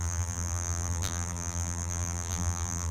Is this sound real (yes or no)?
no